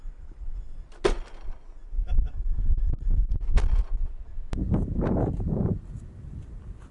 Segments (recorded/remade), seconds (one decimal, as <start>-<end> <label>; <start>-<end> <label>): 0.0-2.0 recorded; 2.0-3.6 remade; 3.6-4.6 recorded; 4.6-5.9 remade; 5.9-6.9 recorded

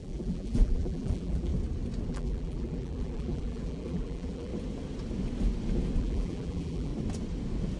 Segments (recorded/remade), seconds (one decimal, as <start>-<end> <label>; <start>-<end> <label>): 0.0-1.5 remade; 1.5-2.1 recorded; 2.1-4.5 remade; 4.5-6.0 recorded; 6.0-6.9 remade; 6.9-7.8 recorded